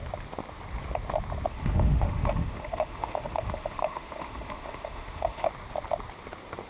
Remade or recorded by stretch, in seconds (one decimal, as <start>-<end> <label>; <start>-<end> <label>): 0.0-1.5 recorded; 1.5-5.5 remade; 5.5-6.7 recorded